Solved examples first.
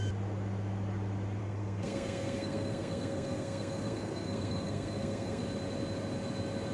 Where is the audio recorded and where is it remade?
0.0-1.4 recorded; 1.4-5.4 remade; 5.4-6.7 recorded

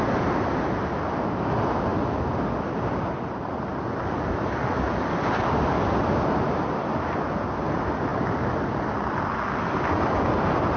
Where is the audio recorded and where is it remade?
0.0-10.8 recorded

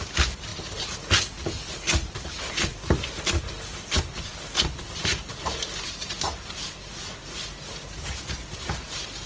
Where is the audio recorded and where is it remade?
0.0-9.3 recorded

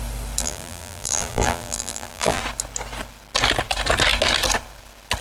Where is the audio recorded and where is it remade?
0.0-0.4 recorded; 0.4-2.4 remade; 2.4-5.2 recorded

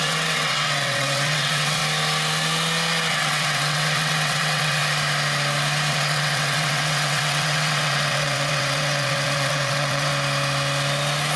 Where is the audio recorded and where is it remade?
0.0-1.8 remade; 1.8-3.1 recorded; 3.1-4.8 remade; 4.8-5.9 recorded; 5.9-10.1 remade; 10.1-11.4 recorded